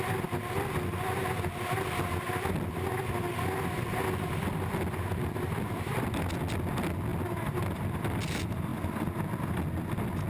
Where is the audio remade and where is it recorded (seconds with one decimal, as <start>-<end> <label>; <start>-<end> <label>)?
0.0-10.3 recorded